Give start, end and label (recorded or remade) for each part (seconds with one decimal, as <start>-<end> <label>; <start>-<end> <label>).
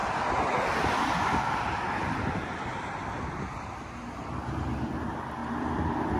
0.0-3.7 remade; 3.7-5.4 recorded; 5.4-6.2 remade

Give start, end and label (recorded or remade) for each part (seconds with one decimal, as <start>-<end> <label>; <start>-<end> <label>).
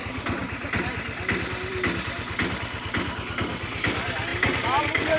0.0-5.2 recorded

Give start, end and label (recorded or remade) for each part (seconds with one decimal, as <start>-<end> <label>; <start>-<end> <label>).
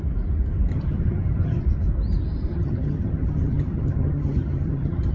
0.0-0.7 recorded; 0.7-1.6 remade; 1.6-2.5 recorded; 2.5-5.1 remade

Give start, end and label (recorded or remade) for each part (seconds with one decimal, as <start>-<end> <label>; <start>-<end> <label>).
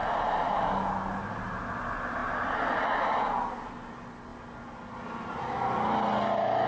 0.0-0.6 remade; 0.6-6.7 recorded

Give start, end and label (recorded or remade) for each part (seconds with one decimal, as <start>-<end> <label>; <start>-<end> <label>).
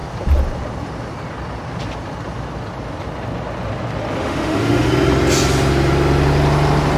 0.0-4.2 recorded; 4.2-4.9 remade; 4.9-7.0 recorded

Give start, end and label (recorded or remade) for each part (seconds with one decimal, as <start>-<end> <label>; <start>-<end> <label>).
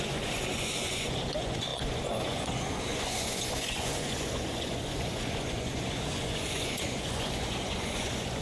0.0-8.4 remade